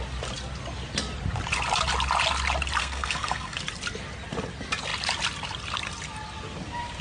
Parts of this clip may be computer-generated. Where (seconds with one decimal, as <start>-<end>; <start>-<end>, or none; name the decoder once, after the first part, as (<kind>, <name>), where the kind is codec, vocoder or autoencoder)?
2.8-3.6 (codec, SNAC)